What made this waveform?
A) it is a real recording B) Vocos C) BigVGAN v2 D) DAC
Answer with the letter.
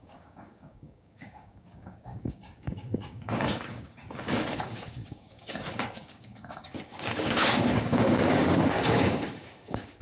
D